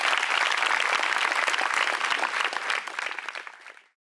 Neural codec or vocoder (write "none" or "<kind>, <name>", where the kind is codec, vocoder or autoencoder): none